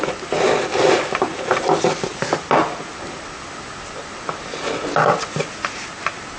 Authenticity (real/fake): real